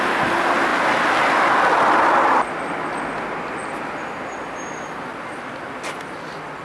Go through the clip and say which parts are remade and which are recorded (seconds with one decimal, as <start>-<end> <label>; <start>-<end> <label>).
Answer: 0.0-5.1 recorded; 5.1-5.6 remade; 5.6-6.6 recorded